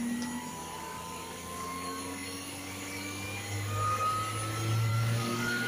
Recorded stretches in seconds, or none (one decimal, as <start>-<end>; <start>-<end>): 0.0-0.6; 4.0-4.9

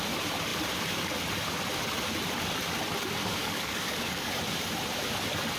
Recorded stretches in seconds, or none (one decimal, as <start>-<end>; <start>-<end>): 0.0-3.2; 4.3-5.6